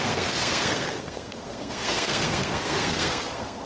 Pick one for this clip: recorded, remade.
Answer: remade